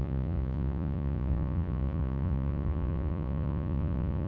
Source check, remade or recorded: remade